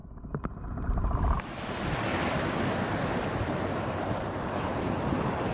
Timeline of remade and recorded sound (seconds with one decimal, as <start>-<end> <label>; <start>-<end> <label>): 0.0-2.9 recorded; 2.9-5.5 remade